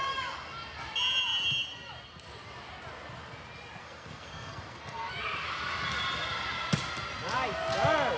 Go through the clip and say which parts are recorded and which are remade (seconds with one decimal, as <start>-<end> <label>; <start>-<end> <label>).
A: 0.0-3.8 recorded; 3.8-5.1 remade; 5.1-8.2 recorded